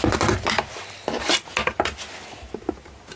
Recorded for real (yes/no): yes